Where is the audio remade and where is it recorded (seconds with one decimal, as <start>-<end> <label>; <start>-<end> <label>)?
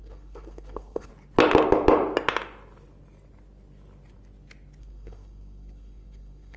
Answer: 0.0-1.1 remade; 1.1-4.8 recorded; 4.8-6.6 remade